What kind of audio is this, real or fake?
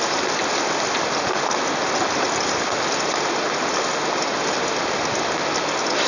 real